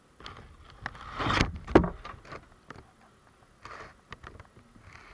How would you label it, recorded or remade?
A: recorded